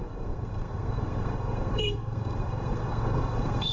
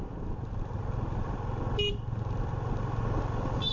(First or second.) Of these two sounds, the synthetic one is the first